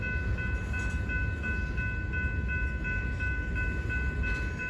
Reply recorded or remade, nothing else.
recorded